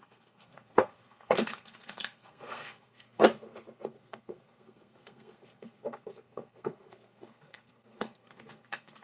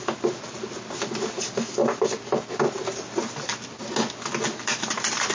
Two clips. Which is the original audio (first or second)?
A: second